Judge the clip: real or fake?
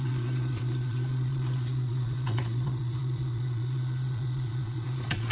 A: fake